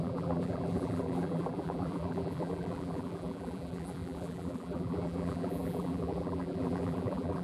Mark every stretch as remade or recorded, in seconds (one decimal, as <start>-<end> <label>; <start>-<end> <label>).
0.0-7.4 remade